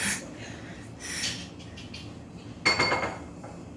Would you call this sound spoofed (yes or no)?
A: no